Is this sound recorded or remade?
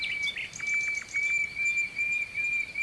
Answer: recorded